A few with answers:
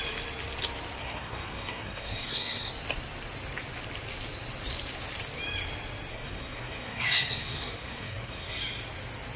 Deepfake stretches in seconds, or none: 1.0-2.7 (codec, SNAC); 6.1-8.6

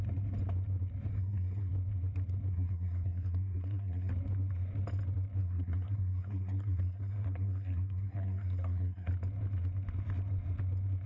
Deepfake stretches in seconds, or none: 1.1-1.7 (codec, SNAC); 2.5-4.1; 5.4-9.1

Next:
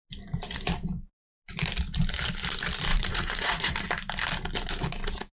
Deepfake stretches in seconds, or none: 2.9-3.7 (vocoder, Vocos)

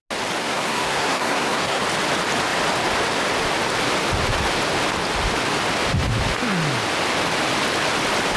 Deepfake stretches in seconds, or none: 0.4-1.8 (codec, SNAC)

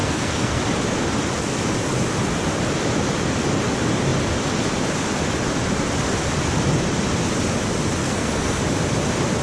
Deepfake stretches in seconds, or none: 0.0-0.6 (codec, SNAC); 8.0-8.6

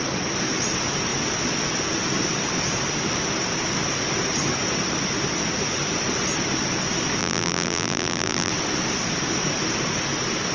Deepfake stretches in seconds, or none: 7.2-8.5 (vocoder, BigVGAN v2)